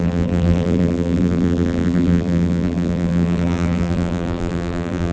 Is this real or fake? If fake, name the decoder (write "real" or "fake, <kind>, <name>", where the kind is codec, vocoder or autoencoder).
fake, vocoder, BigVGAN v2